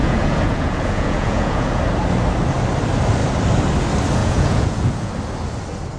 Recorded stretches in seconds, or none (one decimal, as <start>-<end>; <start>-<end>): 1.8-4.2; 5.1-6.0

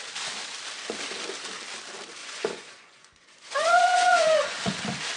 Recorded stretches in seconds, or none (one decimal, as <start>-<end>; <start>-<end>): 0.0-2.2; 4.8-5.2

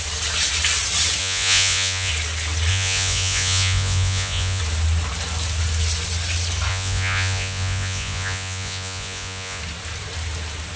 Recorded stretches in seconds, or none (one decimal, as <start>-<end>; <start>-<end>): 0.0-1.2; 2.1-2.7; 4.6-6.7; 9.6-10.8

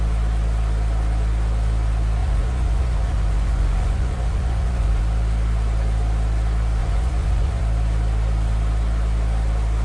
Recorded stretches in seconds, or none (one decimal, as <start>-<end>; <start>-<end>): 0.0-2.2; 5.0-6.8; 7.6-9.8

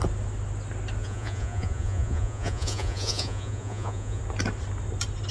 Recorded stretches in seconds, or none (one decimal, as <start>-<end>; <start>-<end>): 0.0-1.0; 4.2-5.3

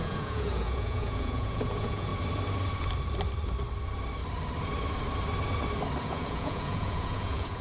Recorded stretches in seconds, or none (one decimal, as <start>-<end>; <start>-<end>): 2.1-6.0